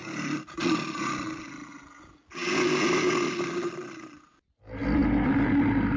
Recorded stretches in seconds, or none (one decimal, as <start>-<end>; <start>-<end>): 0.0-6.0